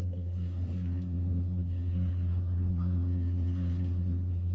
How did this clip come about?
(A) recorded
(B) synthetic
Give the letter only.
B